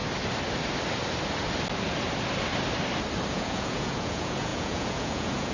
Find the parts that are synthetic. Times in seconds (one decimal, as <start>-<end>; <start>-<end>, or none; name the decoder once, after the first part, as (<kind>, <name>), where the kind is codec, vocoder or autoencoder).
3.3-5.5 (vocoder, Vocos)